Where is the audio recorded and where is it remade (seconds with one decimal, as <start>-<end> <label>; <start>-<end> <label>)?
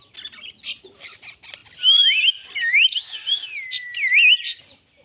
0.0-5.0 recorded